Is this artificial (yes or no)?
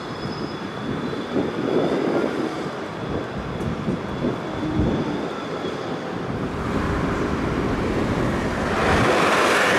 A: yes